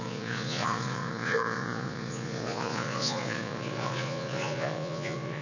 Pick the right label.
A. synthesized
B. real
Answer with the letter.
A